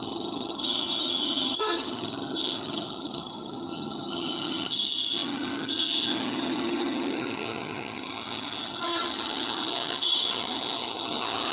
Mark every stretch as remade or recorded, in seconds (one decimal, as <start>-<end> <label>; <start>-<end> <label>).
0.0-11.5 remade